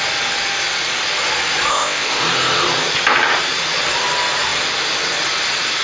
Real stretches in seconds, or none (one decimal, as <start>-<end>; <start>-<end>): 0.0-1.7; 2.2-5.8